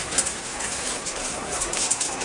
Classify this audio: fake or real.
fake